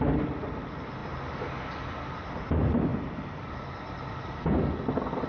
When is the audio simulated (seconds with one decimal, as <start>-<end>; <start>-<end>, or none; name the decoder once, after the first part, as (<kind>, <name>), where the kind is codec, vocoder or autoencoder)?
2.9-3.5 (vocoder, BigVGAN v2)